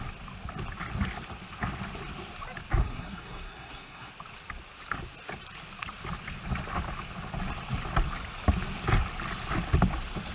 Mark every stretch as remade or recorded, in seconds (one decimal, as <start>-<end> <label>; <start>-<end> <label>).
0.0-2.8 recorded; 2.8-4.1 remade; 4.1-10.3 recorded